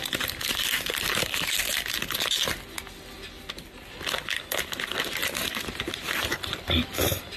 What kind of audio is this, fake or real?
real